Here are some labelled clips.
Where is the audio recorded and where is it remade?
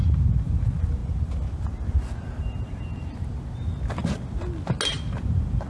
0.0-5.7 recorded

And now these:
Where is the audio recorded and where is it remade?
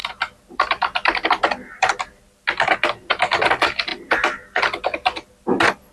0.0-1.9 remade; 1.9-3.9 recorded; 3.9-5.3 remade; 5.3-5.9 recorded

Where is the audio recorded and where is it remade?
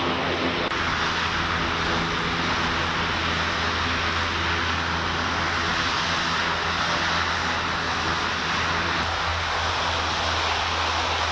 0.0-11.3 recorded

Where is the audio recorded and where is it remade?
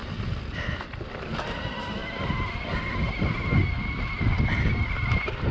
0.0-5.5 recorded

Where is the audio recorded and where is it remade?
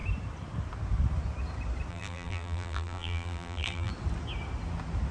0.0-1.9 recorded; 1.9-3.9 remade; 3.9-5.1 recorded